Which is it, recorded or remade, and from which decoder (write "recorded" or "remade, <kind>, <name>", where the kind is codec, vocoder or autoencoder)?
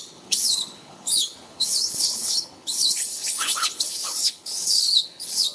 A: remade, codec, HILCodec